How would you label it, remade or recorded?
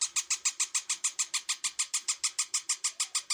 recorded